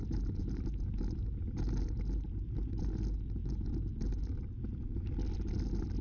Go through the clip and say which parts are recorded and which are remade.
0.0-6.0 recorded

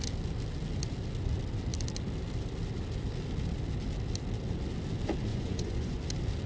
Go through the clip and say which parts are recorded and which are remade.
0.0-5.3 recorded; 5.3-6.0 remade; 6.0-6.5 recorded

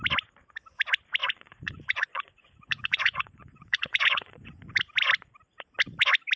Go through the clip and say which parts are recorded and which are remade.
0.0-1.2 recorded; 1.2-4.6 remade; 4.6-6.4 recorded

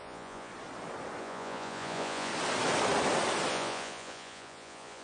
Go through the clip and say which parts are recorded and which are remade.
0.0-0.5 remade; 0.5-1.2 recorded; 1.2-2.3 remade; 2.3-3.5 recorded; 3.5-5.0 remade

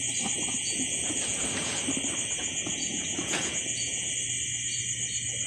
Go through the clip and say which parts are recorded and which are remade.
0.0-0.6 recorded; 0.6-1.8 remade; 1.8-2.4 recorded; 2.4-4.1 remade; 4.1-5.5 recorded

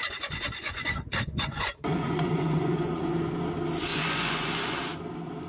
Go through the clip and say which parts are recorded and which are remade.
0.0-3.3 remade; 3.3-3.9 recorded; 3.9-4.8 remade; 4.8-5.5 recorded

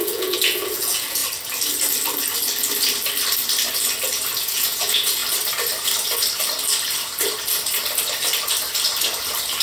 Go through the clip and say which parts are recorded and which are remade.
0.0-1.2 remade; 1.2-4.4 recorded; 4.4-5.2 remade; 5.2-9.6 recorded